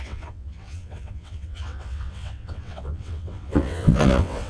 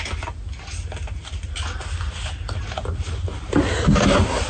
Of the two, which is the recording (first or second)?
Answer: second